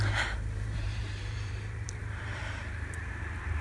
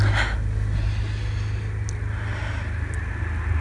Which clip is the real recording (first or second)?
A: second